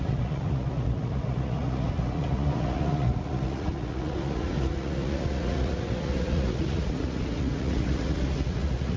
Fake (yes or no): yes